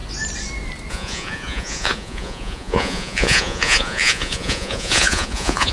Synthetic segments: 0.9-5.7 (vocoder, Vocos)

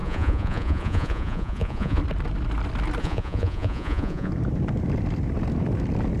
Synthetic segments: 0.0-2.0 (vocoder, Vocos); 3.0-4.3

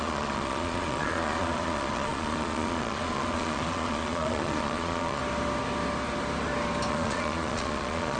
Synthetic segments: 0.0-5.2 (vocoder, Vocos); 6.9-8.2